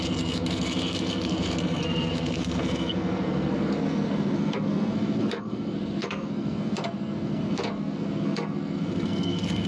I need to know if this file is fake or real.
fake